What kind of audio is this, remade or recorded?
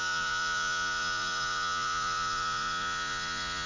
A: remade